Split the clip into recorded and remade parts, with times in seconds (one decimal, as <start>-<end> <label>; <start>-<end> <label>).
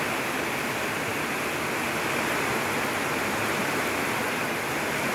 0.0-1.1 remade; 1.1-3.6 recorded; 3.6-4.2 remade; 4.2-5.1 recorded